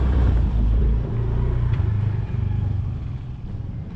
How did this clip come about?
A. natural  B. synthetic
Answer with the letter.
B